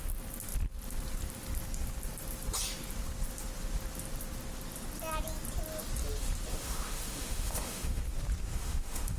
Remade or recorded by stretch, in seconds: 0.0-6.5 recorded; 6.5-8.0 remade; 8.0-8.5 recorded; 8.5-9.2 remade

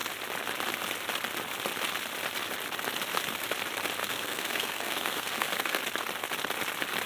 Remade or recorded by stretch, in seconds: 0.0-4.0 recorded; 4.0-5.8 remade; 5.8-7.1 recorded

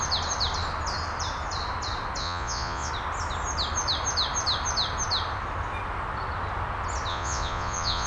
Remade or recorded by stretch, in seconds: 0.0-2.2 recorded; 2.2-2.9 remade; 2.9-7.1 recorded; 7.1-8.1 remade

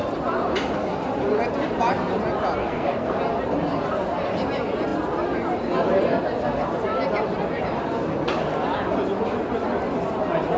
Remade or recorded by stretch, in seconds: 0.0-2.6 recorded; 2.6-3.2 remade; 3.2-10.6 recorded

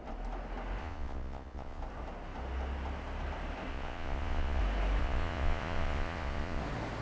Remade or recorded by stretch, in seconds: 0.0-0.8 recorded; 0.8-1.8 remade; 1.8-3.7 recorded; 3.7-4.6 remade; 4.6-5.0 recorded; 5.0-6.6 remade; 6.6-7.0 recorded

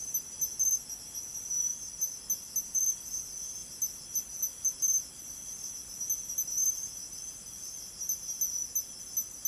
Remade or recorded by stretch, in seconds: 0.0-9.5 recorded

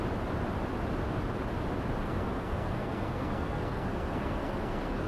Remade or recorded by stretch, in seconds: 0.0-2.0 recorded; 2.0-5.1 remade

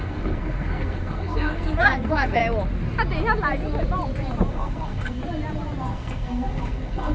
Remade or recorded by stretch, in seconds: 0.0-2.4 remade; 2.4-4.5 recorded; 4.5-5.2 remade; 5.2-5.8 recorded; 5.8-7.1 remade